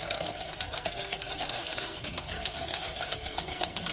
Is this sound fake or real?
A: fake